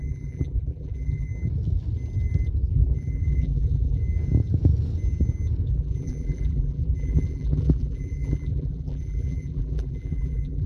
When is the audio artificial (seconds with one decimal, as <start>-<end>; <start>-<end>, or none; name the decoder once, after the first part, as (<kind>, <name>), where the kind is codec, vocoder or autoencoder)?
0.0-1.3 (vocoder, BigVGAN v2); 2.7-4.0; 5.7-10.7